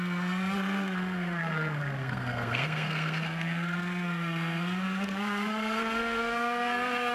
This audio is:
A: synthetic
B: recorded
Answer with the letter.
A